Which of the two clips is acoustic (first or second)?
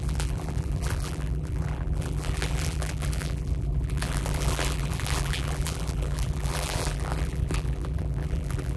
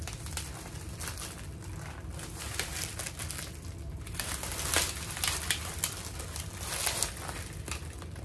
second